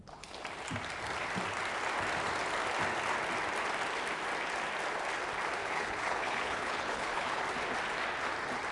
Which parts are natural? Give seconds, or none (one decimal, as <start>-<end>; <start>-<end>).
0.0-5.6; 7.4-8.7